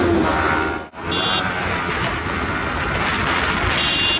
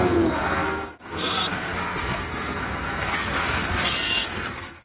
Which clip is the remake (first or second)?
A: second